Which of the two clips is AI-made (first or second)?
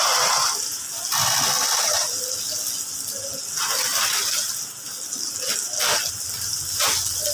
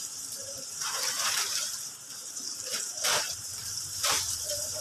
second